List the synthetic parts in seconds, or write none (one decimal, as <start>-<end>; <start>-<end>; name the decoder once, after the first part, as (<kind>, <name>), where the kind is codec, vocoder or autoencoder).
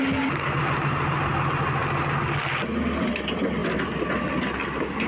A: none